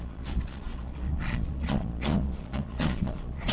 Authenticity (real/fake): fake